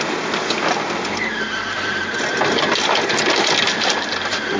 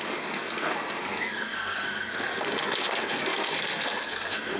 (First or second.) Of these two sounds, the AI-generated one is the second